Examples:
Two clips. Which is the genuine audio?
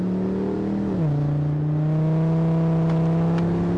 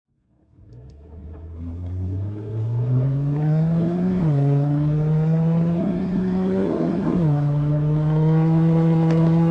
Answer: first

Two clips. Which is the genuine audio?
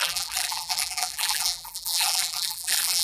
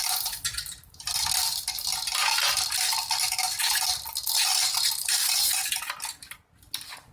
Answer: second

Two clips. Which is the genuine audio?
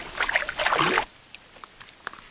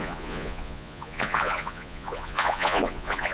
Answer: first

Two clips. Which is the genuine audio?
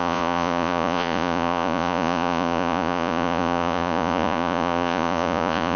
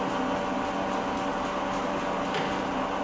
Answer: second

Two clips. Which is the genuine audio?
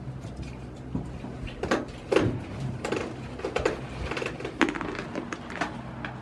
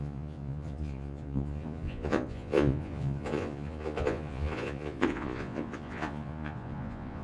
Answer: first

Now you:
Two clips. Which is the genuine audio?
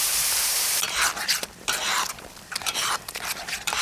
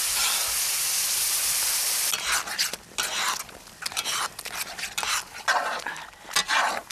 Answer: second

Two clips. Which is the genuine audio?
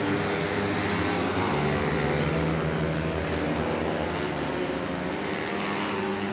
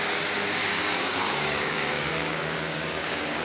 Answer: first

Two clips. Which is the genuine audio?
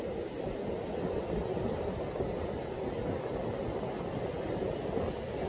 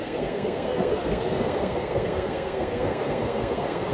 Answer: first